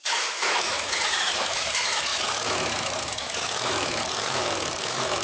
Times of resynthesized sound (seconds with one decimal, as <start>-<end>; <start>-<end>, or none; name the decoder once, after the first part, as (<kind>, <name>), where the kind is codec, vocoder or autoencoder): 0.0-5.2 (autoencoder, DAC-VAE)